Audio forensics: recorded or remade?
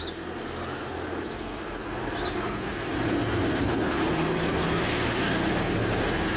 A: recorded